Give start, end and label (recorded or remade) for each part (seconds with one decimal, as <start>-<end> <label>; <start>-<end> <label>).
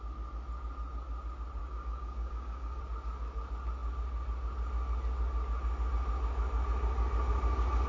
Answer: 0.0-1.6 recorded; 1.6-2.8 remade; 2.8-7.9 recorded